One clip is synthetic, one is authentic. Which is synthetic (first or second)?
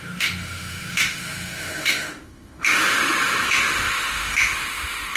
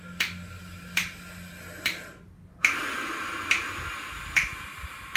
first